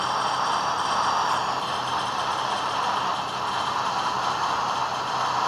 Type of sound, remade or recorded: recorded